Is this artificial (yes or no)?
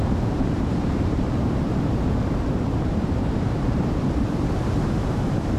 yes